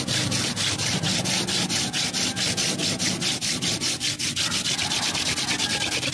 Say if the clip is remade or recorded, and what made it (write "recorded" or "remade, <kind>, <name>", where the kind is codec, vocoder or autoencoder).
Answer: recorded